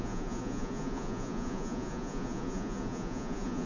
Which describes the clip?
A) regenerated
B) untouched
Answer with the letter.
A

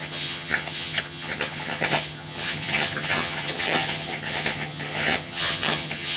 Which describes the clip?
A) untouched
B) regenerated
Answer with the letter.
B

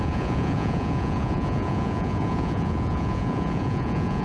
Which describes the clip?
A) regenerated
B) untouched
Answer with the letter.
A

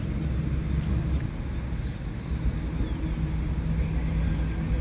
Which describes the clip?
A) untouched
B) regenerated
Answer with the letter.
A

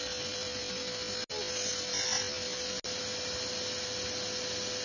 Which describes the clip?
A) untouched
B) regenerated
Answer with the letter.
A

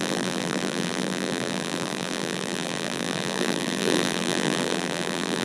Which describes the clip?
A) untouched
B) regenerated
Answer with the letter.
B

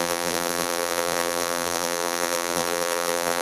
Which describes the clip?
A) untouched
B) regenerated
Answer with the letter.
B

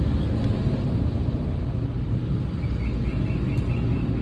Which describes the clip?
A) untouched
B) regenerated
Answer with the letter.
A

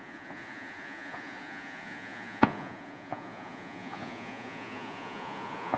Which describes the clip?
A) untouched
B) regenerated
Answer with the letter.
B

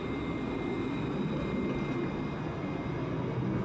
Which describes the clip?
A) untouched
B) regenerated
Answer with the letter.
A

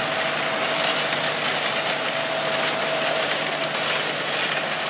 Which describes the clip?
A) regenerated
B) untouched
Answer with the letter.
B